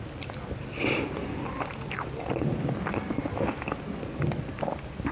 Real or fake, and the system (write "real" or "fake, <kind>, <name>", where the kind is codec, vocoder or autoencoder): real